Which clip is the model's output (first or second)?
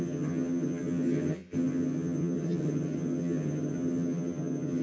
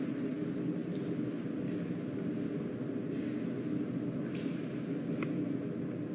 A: first